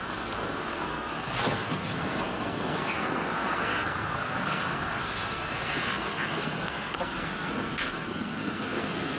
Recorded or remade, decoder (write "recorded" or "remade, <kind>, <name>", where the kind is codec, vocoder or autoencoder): remade, codec, SNAC